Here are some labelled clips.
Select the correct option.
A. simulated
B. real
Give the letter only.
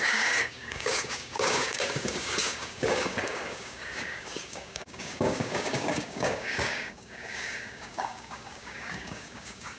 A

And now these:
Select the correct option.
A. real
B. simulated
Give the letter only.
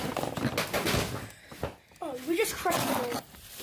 A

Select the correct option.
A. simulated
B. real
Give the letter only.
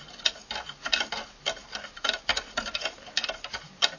B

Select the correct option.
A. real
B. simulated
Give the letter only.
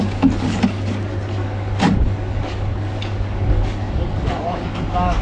B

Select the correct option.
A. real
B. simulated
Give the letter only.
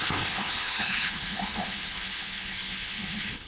B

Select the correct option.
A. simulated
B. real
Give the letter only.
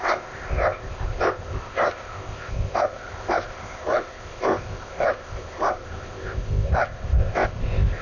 A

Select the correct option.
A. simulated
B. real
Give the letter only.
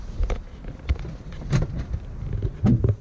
B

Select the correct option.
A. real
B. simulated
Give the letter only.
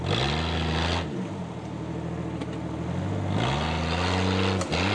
A